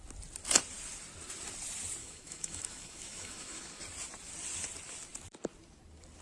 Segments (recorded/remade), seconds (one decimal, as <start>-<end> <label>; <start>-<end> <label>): 0.0-2.0 recorded; 2.0-3.8 remade; 3.8-6.2 recorded